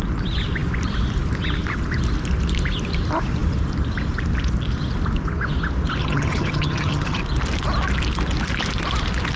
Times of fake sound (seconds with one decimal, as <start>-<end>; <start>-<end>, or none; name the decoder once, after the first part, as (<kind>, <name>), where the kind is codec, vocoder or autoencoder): 6.0-7.2 (vocoder, HiFi-GAN)